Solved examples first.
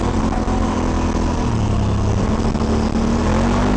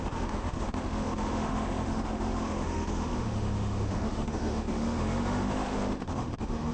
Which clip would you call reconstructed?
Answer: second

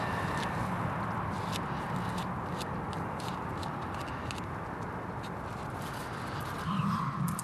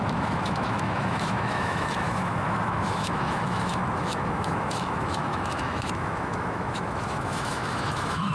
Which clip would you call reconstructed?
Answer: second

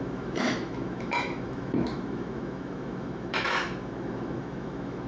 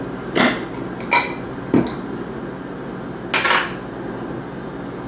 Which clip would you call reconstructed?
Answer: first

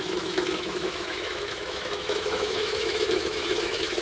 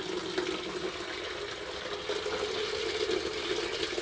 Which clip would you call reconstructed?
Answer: first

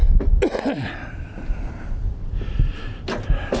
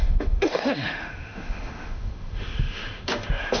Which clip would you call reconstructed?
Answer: second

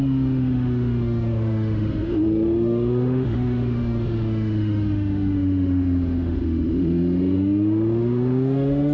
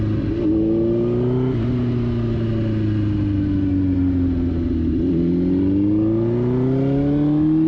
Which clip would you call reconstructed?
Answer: first